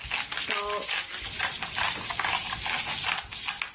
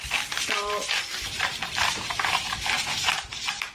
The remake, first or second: second